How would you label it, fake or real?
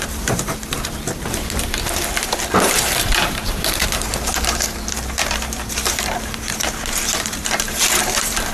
fake